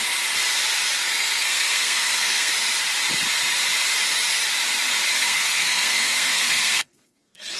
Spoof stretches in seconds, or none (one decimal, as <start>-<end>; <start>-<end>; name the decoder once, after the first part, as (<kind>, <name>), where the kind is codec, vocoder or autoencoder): 1.0-2.5 (codec, SNAC); 5.1-7.6